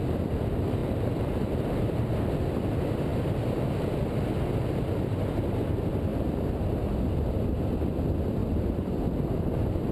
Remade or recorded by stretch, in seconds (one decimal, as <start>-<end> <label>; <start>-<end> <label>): 0.0-0.8 recorded; 0.8-2.3 remade; 2.3-6.1 recorded; 6.1-6.9 remade; 6.9-8.4 recorded; 8.4-9.0 remade; 9.0-9.9 recorded

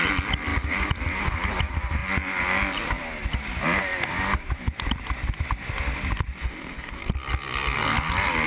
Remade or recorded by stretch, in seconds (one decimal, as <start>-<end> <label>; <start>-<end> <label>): 0.0-6.4 recorded; 6.4-7.0 remade; 7.0-8.5 recorded